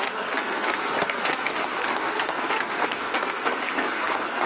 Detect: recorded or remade remade